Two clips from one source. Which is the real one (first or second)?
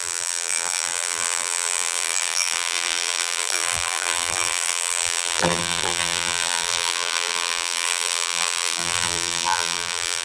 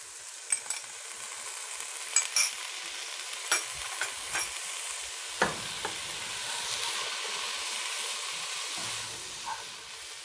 second